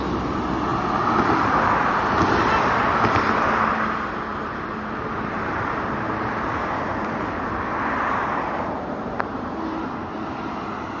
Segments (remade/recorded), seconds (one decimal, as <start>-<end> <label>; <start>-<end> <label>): 0.0-4.3 recorded; 4.3-5.7 remade; 5.7-8.2 recorded; 8.2-9.5 remade; 9.5-11.0 recorded